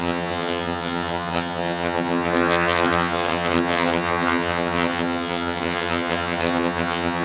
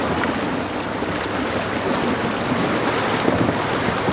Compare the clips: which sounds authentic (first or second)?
second